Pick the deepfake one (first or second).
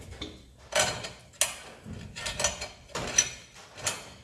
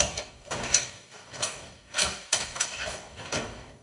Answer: second